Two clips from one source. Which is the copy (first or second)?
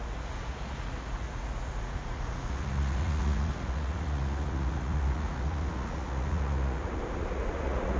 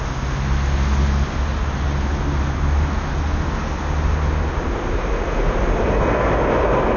first